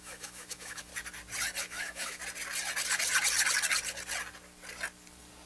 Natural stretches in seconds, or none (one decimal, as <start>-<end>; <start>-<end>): 0.9-1.6; 2.2-5.5